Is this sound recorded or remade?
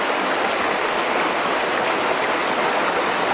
recorded